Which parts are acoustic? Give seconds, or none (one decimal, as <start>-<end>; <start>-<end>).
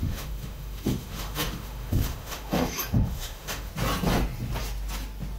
3.7-5.4